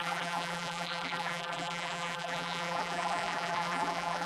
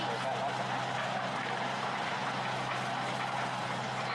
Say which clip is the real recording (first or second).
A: second